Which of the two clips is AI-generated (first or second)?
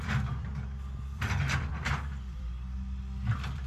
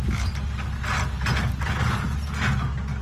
first